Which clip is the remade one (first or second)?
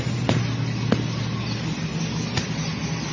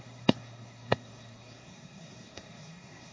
second